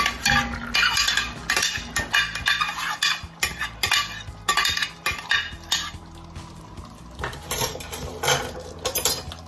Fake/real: real